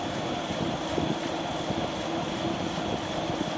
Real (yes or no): yes